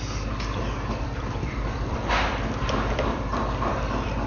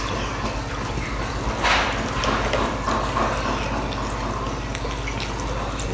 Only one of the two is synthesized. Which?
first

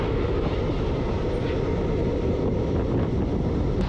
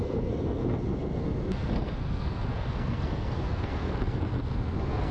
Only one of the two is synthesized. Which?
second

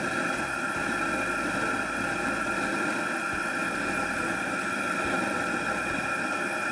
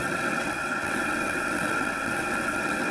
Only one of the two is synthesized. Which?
second